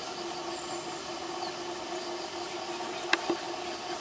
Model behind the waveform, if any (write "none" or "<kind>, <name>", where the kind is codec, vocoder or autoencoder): none